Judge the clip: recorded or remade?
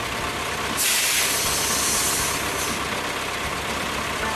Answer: recorded